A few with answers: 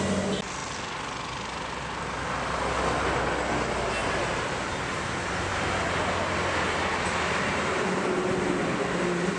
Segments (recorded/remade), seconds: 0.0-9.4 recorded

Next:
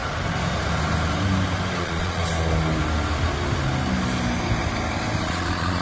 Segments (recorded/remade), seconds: 0.0-1.8 recorded; 1.8-2.2 remade; 2.2-5.2 recorded; 5.2-5.8 remade

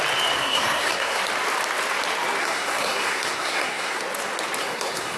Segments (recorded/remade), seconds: 0.0-0.4 recorded; 0.4-1.2 remade; 1.2-2.4 recorded; 2.4-4.0 remade; 4.0-4.6 recorded; 4.6-5.2 remade

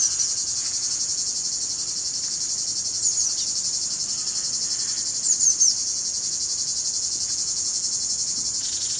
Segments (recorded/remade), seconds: 0.0-0.4 recorded; 0.4-1.5 remade; 1.5-5.8 recorded; 5.8-9.0 remade

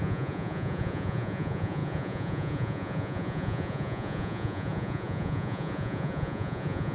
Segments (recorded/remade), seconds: 0.0-6.9 remade

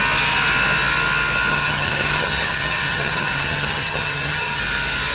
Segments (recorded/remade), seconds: 0.0-1.5 recorded; 1.5-4.6 remade; 4.6-5.1 recorded

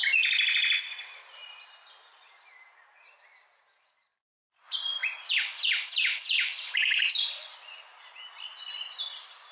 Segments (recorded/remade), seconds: 0.0-9.5 recorded

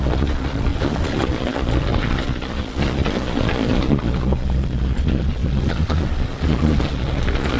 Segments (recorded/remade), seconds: 0.0-7.6 remade